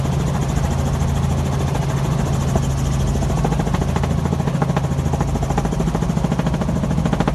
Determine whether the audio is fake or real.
real